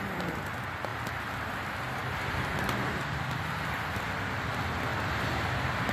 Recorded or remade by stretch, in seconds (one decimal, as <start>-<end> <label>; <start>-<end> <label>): 0.0-2.0 recorded; 2.0-4.5 remade; 4.5-4.9 recorded; 4.9-5.4 remade; 5.4-5.9 recorded